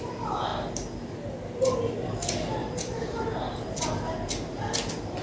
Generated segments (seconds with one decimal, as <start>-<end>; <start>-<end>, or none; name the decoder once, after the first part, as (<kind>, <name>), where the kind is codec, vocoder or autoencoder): 2.6-4.3 (vocoder, BigVGAN v2)